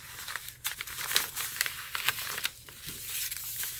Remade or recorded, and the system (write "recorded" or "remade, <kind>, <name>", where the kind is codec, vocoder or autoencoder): remade, vocoder, BigVGAN v2